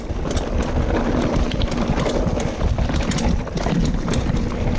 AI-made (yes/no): no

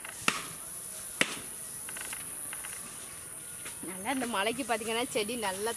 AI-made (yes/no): no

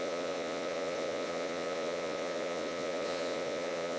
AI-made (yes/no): yes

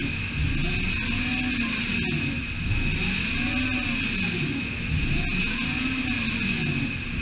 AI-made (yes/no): no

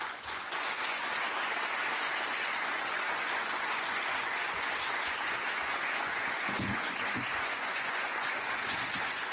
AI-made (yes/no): yes